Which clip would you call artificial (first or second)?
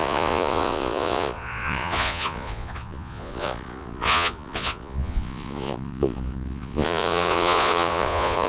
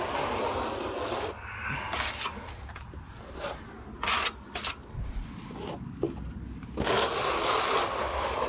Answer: first